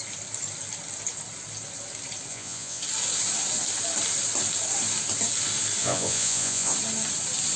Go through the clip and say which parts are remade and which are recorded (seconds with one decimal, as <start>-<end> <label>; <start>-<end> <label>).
0.0-2.3 recorded; 2.3-2.8 remade; 2.8-5.8 recorded; 5.8-6.7 remade; 6.7-7.6 recorded